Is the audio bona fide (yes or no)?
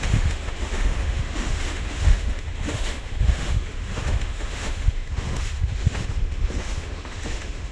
no